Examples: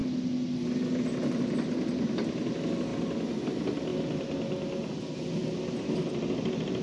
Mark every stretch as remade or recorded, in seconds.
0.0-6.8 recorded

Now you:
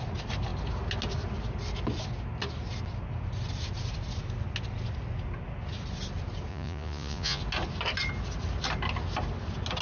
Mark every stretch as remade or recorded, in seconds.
0.0-6.5 recorded; 6.5-7.4 remade; 7.4-9.8 recorded

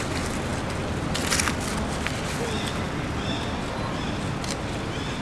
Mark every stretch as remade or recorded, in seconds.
0.0-5.2 recorded

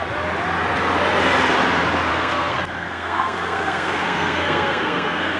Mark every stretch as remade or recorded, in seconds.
0.0-2.1 recorded; 2.1-5.4 remade

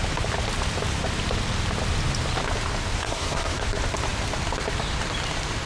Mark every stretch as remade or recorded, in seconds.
0.0-3.0 recorded; 3.0-3.6 remade; 3.6-5.7 recorded